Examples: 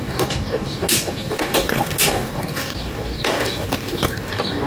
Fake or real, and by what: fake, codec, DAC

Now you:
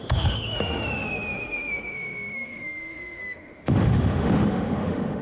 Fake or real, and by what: fake, autoencoder, DAC-VAE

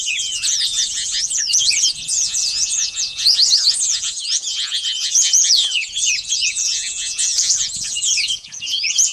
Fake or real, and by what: fake, vocoder, Vocos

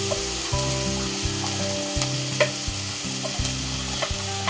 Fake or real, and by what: real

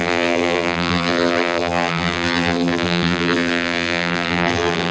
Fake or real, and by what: fake, vocoder, BigVGAN v2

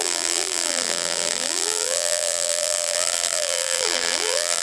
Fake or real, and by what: fake, vocoder, BigVGAN v2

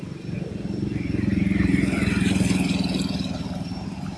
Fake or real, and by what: real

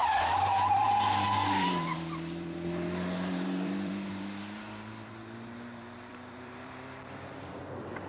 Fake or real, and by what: fake, vocoder, BigVGAN v2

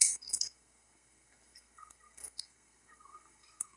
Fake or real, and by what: fake, codec, SNAC